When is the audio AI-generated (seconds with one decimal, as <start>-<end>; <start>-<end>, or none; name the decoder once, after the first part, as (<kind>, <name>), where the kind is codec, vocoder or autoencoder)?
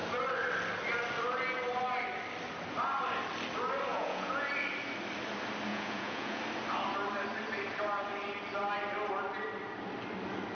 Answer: 3.9-4.5 (vocoder, Vocos); 5.7-6.4